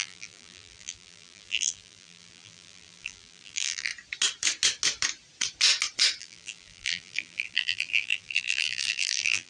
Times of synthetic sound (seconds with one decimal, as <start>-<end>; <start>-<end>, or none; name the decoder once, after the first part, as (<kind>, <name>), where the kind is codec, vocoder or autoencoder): 0.0-3.9 (vocoder, BigVGAN v2); 6.2-9.5